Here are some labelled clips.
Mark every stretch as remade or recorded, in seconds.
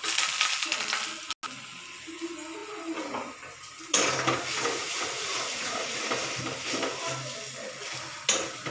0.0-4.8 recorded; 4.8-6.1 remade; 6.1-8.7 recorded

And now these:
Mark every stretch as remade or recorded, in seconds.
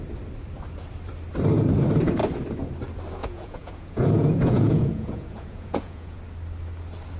0.0-3.2 recorded; 3.2-6.2 remade; 6.2-7.2 recorded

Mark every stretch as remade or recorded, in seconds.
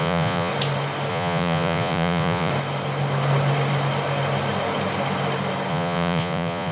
0.0-0.5 remade; 0.5-1.1 recorded; 1.1-2.5 remade; 2.5-5.7 recorded; 5.7-6.7 remade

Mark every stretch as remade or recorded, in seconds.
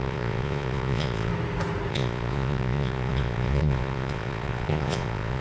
0.0-1.3 remade; 1.3-1.9 recorded; 1.9-5.4 remade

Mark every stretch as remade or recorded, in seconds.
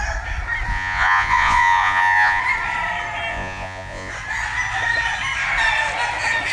0.0-0.7 recorded; 0.7-2.4 remade; 2.4-3.3 recorded; 3.3-4.1 remade; 4.1-6.5 recorded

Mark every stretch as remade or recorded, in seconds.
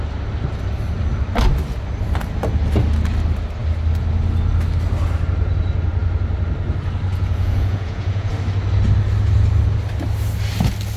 0.0-7.1 recorded; 7.1-8.3 remade; 8.3-11.0 recorded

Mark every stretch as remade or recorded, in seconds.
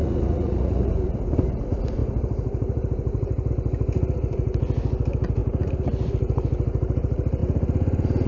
0.0-0.9 remade; 0.9-8.3 recorded